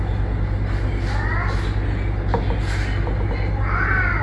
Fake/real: real